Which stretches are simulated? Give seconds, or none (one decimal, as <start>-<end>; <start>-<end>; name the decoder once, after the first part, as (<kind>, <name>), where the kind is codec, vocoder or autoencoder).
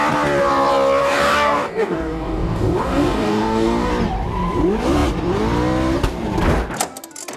1.0-3.9 (codec, DAC)